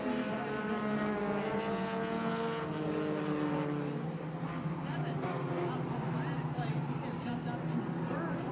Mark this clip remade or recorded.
recorded